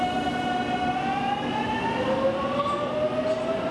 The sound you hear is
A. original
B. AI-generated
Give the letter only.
A